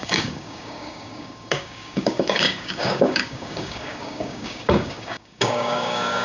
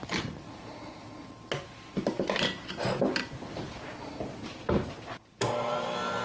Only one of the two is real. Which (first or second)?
second